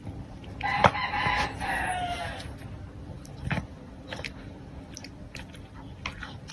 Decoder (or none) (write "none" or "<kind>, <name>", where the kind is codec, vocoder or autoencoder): none